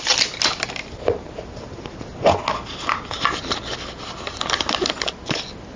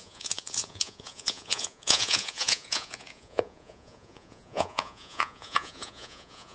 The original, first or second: first